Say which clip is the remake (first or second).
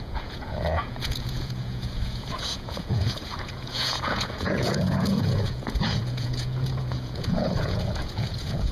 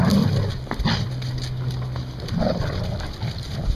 first